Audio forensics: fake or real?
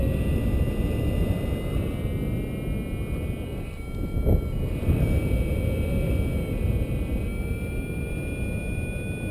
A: real